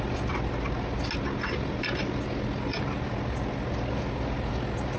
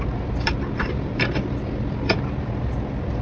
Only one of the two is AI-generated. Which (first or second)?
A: second